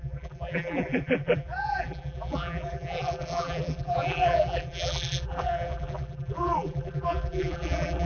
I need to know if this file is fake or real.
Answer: fake